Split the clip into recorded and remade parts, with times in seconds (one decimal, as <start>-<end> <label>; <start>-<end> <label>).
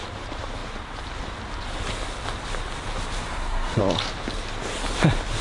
0.0-3.3 recorded; 3.3-3.8 remade; 3.8-5.4 recorded